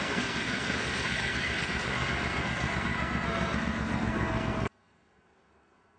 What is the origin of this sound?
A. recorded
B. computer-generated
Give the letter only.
B